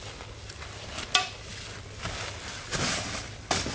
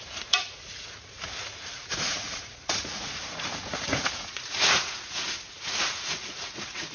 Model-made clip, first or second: second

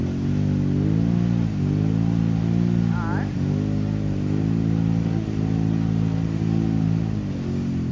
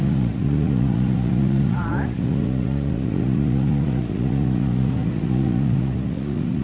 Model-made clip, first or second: second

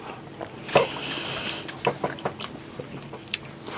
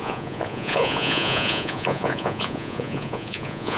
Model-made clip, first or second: second